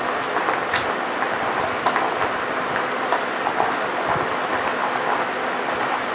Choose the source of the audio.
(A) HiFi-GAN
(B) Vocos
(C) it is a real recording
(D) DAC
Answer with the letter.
C